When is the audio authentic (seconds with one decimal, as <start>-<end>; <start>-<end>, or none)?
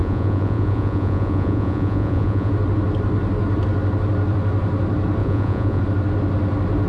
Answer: 2.5-5.2; 5.8-6.9